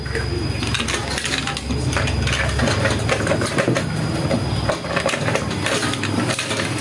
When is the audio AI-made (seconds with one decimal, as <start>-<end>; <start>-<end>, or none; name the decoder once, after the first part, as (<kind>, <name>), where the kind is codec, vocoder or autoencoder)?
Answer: none